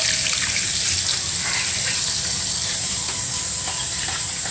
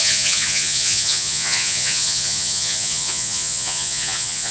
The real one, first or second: first